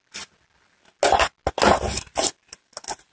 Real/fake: real